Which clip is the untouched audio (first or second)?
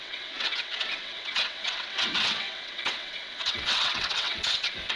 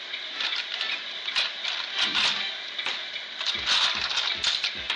second